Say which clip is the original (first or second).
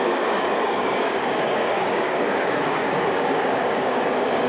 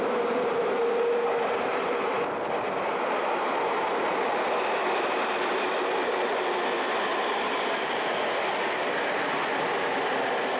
second